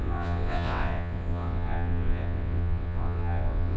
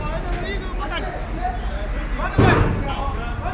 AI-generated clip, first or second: first